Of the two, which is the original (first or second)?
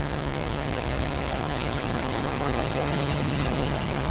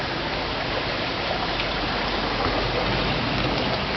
second